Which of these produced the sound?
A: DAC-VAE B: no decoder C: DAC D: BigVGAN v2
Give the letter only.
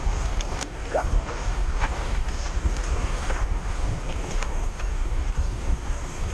C